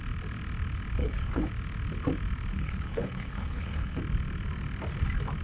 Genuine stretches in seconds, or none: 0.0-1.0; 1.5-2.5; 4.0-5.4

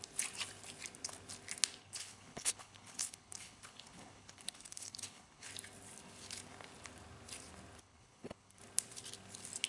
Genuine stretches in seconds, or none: 0.0-1.8; 5.5-7.8; 8.6-9.7

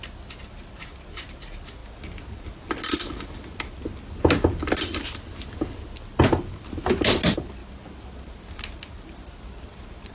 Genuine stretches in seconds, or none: 0.0-10.1

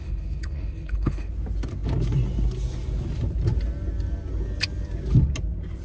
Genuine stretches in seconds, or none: 1.3-5.8

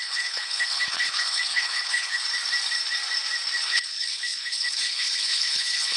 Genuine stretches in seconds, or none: 2.2-3.6

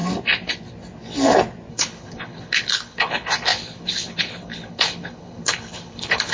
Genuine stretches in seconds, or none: 0.0-1.7

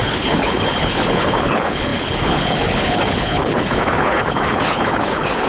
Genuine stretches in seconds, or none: none

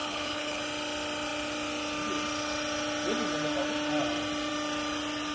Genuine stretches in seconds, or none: 0.6-5.3